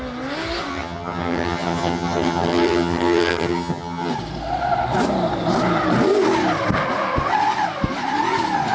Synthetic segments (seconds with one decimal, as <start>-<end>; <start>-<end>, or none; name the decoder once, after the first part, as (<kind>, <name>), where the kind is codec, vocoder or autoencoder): 0.7-4.1 (vocoder, HiFi-GAN)